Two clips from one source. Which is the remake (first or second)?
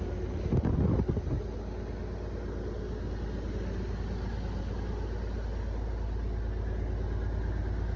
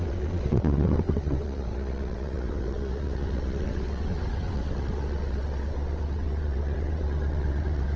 second